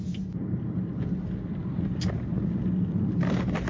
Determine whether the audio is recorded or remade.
recorded